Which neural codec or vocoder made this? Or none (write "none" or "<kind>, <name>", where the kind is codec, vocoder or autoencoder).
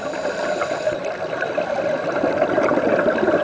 none